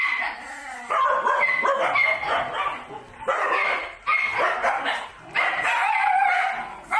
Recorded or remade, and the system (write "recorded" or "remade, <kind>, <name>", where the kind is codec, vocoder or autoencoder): recorded